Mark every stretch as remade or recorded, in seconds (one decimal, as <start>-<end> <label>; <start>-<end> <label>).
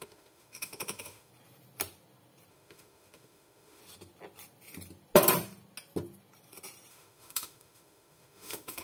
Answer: 0.0-1.3 remade; 1.3-2.5 recorded; 2.5-3.8 remade; 3.8-6.9 recorded; 6.9-8.8 remade